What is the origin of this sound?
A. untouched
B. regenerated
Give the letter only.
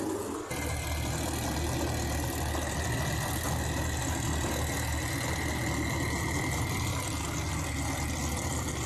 A